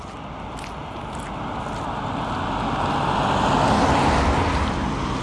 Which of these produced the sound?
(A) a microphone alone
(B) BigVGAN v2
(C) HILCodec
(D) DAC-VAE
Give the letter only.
A